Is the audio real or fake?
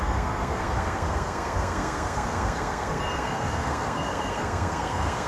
fake